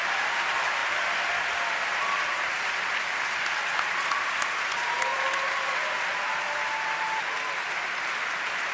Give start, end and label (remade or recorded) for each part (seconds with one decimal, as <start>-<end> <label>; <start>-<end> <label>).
0.0-5.1 recorded; 5.1-6.0 remade; 6.0-8.7 recorded